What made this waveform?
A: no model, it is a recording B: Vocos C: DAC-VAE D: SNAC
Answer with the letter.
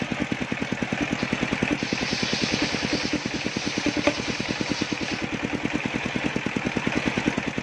A